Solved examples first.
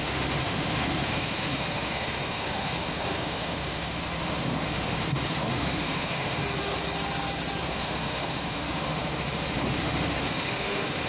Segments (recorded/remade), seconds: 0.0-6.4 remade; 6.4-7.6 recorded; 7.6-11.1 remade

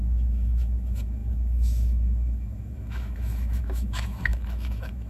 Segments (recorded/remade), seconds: 0.0-5.1 remade

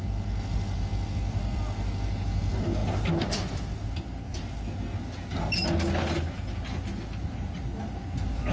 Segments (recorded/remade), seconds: 0.0-8.5 recorded

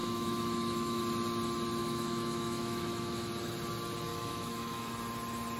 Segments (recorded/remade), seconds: 0.0-1.0 remade; 1.0-1.8 recorded; 1.8-3.3 remade; 3.3-4.1 recorded; 4.1-4.9 remade; 4.9-5.6 recorded

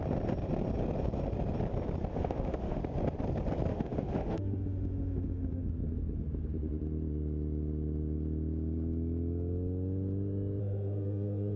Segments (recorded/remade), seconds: 0.0-2.1 recorded; 2.1-2.8 remade; 2.8-3.7 recorded; 3.7-5.6 remade; 5.6-10.6 recorded; 10.6-11.6 remade